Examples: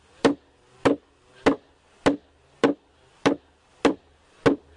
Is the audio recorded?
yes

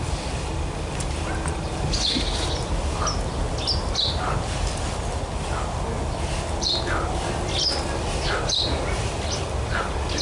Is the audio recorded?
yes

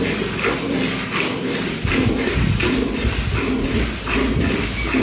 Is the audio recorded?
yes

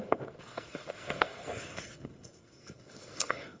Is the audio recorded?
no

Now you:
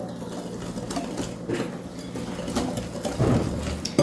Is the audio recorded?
yes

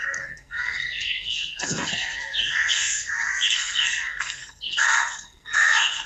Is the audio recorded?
no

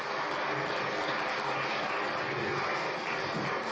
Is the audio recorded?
yes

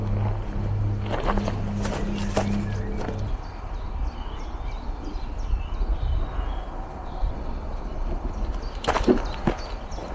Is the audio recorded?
yes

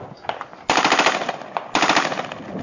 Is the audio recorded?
yes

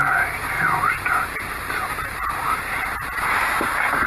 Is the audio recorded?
yes